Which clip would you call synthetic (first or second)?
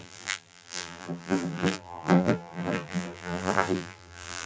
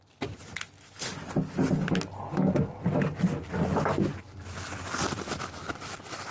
first